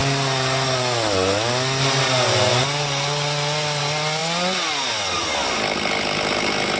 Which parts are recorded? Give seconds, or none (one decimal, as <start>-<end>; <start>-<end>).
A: 0.0-6.8